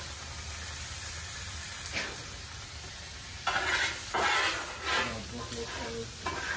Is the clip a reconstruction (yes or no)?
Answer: no